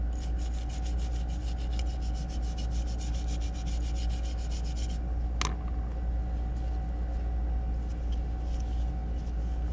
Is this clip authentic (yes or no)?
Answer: yes